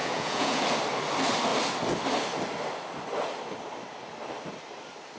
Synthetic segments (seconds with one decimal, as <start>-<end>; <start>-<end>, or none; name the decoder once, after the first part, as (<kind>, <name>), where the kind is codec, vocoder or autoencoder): 0.0-0.6 (vocoder, Vocos)